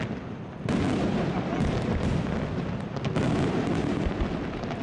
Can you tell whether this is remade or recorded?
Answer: recorded